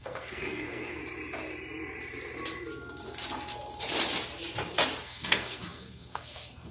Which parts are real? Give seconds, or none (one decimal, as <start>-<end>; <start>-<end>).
1.0-5.0